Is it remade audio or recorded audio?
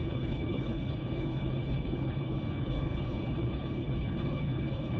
remade